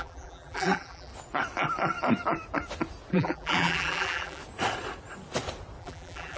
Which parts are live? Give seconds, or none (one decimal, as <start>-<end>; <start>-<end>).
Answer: 1.1-3.1; 4.4-5.8

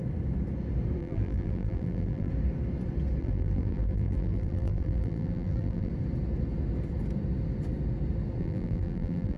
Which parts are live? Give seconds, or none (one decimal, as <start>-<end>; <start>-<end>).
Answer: 0.0-1.0; 2.3-3.2; 5.9-8.4

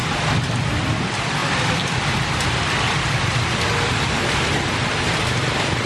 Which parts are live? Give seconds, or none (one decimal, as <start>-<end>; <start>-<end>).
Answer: 0.0-0.7

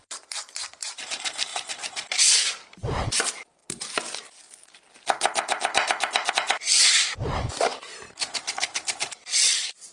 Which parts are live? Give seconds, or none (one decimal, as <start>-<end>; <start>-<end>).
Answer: 3.6-6.3

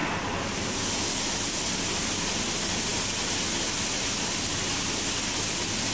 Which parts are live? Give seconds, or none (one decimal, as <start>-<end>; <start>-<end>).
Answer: 0.8-5.9